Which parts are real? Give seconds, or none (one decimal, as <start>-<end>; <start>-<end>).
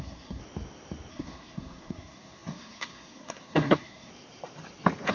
0.4-1.1; 4.1-5.1